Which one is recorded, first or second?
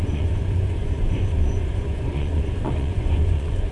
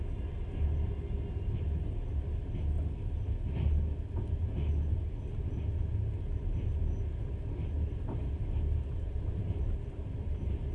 second